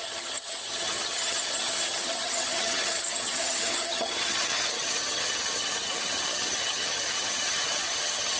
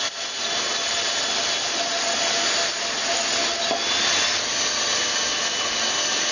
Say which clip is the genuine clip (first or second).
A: second